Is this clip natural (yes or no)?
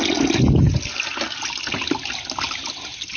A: yes